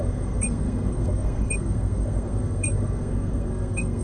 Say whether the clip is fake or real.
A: fake